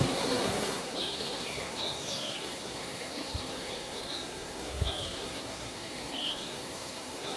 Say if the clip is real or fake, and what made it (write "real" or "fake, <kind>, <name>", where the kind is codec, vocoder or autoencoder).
fake, codec, SNAC